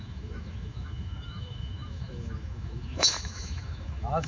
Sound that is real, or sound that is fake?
fake